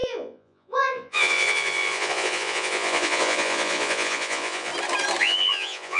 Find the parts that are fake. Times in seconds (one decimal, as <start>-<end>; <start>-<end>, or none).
0.0-4.7; 5.2-6.0